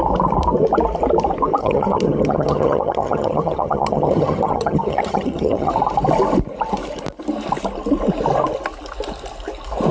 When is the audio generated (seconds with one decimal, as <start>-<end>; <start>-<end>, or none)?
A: 1.6-5.7